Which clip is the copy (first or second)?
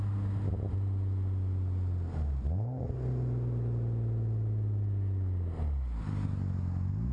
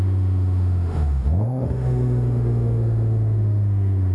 second